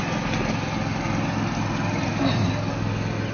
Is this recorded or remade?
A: recorded